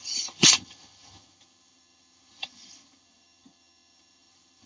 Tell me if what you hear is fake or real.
fake